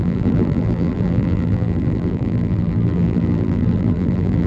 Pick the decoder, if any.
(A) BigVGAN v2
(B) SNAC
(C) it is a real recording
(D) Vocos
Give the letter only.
A